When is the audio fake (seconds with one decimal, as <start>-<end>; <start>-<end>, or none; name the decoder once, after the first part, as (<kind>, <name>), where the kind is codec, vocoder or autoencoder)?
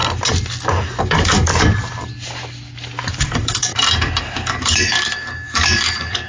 1.0-1.5 (codec, DAC); 3.2-3.7; 4.2-6.3